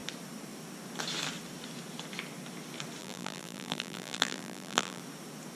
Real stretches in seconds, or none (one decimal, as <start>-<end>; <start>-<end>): 0.0-3.0; 5.0-5.6